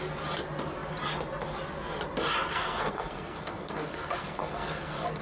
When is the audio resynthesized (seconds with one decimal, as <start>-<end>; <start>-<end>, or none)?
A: 2.5-5.2